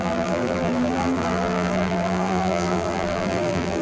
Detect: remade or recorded remade